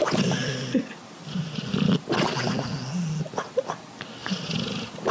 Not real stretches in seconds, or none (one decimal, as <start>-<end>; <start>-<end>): none